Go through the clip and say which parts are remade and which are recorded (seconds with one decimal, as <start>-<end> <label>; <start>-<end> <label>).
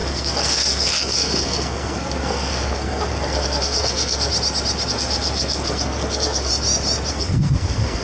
0.0-4.3 remade; 4.3-4.9 recorded; 4.9-6.5 remade; 6.5-7.1 recorded; 7.1-8.0 remade